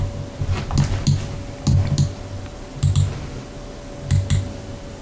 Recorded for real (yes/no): yes